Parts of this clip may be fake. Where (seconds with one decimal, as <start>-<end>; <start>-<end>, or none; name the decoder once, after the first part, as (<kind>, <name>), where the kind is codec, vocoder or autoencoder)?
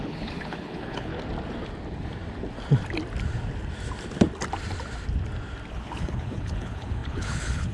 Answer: 0.0-1.1 (codec, HILCodec); 5.7-7.7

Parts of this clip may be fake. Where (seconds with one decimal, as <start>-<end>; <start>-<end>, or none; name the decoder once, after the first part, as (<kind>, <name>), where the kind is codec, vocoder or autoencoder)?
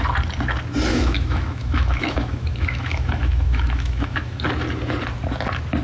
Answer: 0.9-4.4 (autoencoder, DAC-VAE)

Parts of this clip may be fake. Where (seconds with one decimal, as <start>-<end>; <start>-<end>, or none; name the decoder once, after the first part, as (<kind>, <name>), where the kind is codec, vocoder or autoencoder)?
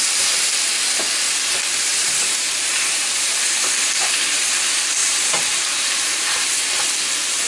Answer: 1.9-3.7 (vocoder, BigVGAN v2); 5.0-6.5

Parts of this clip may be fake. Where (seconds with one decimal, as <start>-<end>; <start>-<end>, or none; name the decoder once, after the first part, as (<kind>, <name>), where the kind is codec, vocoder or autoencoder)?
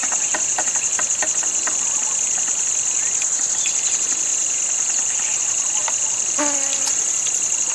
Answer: 0.0-0.7 (vocoder, Vocos)